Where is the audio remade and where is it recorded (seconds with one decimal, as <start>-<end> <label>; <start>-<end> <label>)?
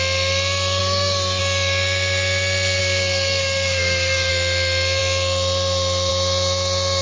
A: 0.0-0.8 recorded; 0.8-1.4 remade; 1.4-2.8 recorded; 2.8-4.3 remade; 4.3-7.0 recorded